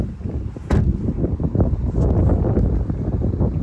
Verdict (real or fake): real